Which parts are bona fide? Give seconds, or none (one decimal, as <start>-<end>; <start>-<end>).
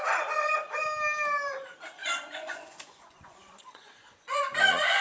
0.0-2.0